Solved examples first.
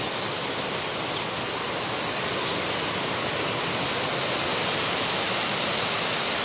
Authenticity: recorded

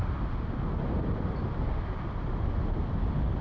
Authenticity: recorded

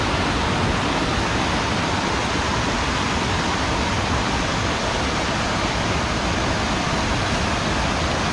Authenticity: recorded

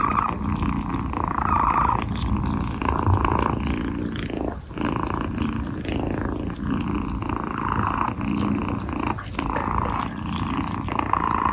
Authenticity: recorded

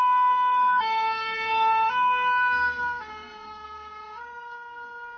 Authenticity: remade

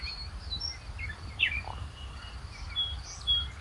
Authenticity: recorded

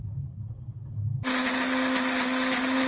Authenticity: recorded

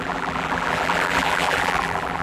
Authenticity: remade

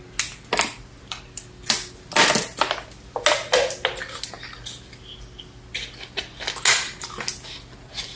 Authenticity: recorded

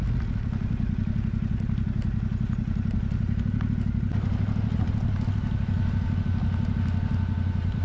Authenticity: recorded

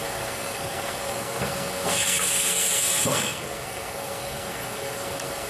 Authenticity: remade